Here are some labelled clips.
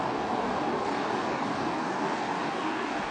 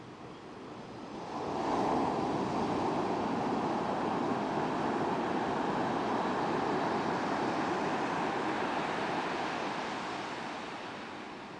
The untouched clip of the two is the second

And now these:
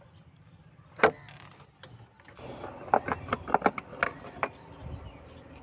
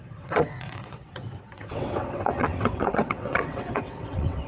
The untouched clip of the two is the first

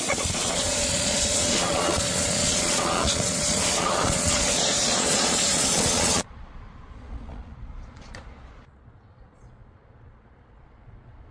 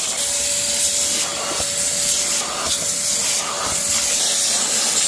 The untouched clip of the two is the second